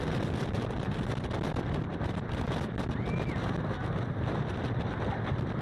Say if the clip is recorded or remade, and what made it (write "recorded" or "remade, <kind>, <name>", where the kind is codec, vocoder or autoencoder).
recorded